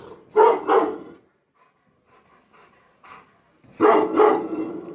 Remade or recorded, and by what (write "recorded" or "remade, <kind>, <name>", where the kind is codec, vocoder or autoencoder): recorded